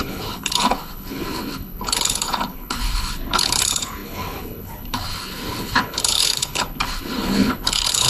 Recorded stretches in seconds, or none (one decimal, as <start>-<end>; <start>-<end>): none